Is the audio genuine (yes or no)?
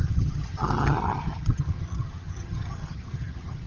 no